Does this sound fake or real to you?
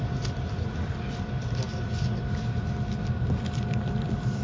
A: real